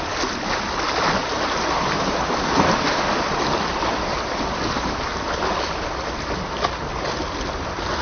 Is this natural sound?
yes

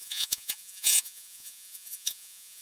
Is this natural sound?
no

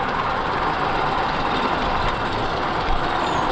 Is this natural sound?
yes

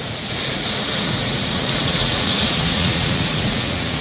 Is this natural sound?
no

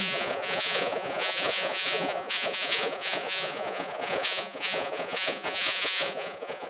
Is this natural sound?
no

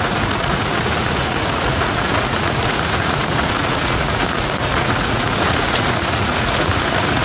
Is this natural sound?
no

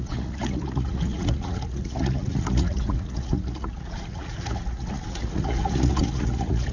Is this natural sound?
no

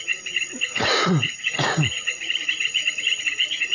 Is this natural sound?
no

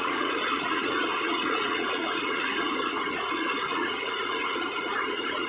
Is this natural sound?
no